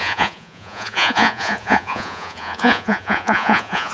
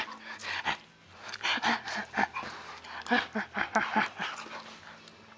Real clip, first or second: second